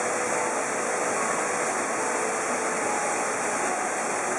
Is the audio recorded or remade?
recorded